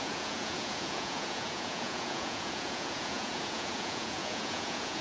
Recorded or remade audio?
remade